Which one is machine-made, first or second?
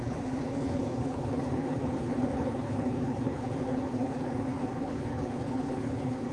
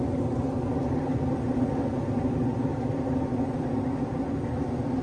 first